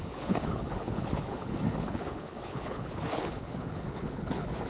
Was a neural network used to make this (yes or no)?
yes